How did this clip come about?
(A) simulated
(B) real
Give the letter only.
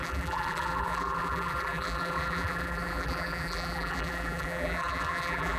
A